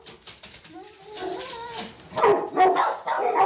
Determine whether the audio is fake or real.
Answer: real